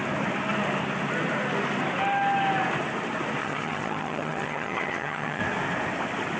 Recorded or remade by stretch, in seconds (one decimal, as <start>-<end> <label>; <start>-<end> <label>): 0.0-3.4 recorded; 3.4-5.4 remade; 5.4-6.4 recorded